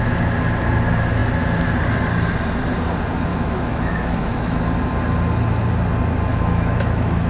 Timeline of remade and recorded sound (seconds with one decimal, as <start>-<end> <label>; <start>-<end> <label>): 0.0-3.3 recorded; 3.3-4.6 remade; 4.6-6.3 recorded; 6.3-7.3 remade